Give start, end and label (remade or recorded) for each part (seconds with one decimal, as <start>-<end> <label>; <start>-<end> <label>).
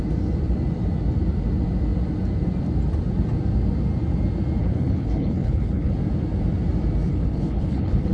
0.0-4.6 recorded; 4.6-5.9 remade; 5.9-7.1 recorded; 7.1-8.1 remade